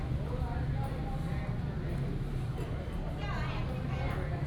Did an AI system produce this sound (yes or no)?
no